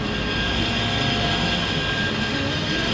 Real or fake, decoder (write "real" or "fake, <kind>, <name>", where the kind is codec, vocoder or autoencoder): real